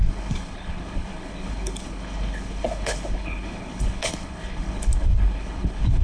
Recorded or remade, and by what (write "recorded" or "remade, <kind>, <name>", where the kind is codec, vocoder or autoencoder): remade, codec, HILCodec